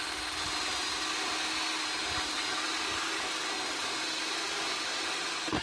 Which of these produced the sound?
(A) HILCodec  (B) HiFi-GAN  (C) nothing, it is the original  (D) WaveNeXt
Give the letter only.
C